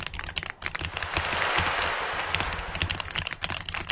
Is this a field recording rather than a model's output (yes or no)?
yes